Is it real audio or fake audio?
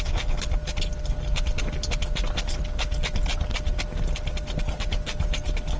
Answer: real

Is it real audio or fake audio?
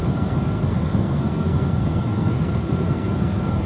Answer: fake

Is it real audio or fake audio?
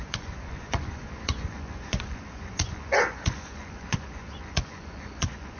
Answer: fake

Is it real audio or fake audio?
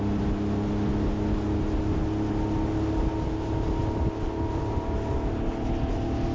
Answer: real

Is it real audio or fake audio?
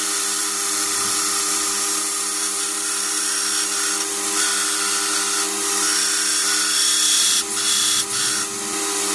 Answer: real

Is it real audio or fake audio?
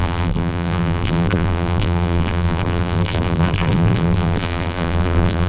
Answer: fake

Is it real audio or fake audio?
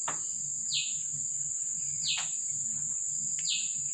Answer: real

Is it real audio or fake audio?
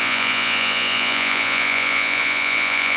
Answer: fake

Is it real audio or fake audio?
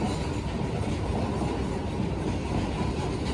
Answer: real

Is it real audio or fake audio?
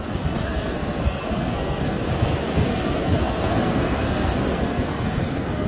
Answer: fake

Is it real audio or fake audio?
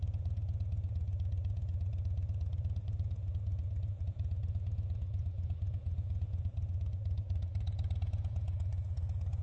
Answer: fake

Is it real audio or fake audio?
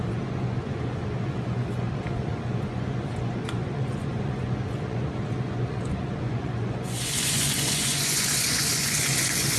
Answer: fake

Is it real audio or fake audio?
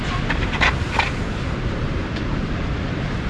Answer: fake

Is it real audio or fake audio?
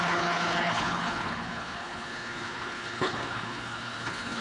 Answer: fake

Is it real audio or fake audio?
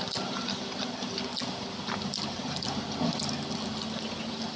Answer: real